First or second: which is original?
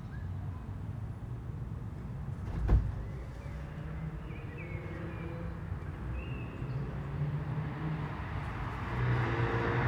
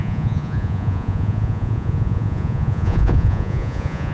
first